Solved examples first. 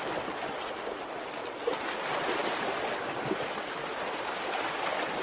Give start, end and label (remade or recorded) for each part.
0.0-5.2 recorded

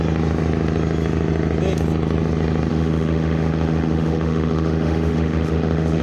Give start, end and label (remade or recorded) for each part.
0.0-2.7 recorded; 2.7-6.0 remade

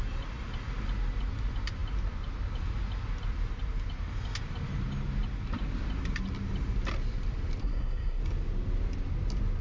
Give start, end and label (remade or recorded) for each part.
0.0-7.6 recorded; 7.6-8.2 remade; 8.2-9.6 recorded

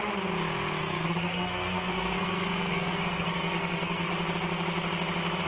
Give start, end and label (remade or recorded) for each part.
0.0-0.8 recorded; 0.8-4.1 remade; 4.1-5.5 recorded

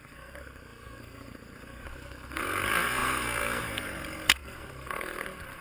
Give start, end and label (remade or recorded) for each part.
0.0-5.6 remade